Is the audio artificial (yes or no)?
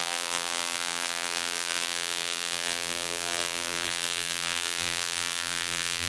yes